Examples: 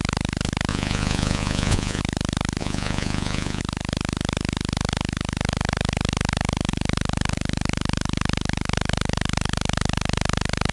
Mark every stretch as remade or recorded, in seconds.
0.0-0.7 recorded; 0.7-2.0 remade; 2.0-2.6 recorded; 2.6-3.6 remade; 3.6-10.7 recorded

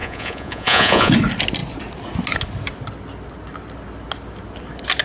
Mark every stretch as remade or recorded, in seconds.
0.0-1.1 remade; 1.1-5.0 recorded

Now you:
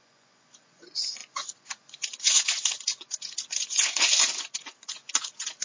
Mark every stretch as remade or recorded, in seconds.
0.0-5.6 remade

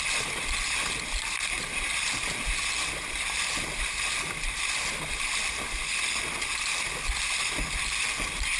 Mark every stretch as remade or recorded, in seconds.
0.0-8.6 recorded